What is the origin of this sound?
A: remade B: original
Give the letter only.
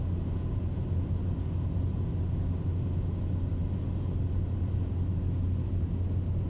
B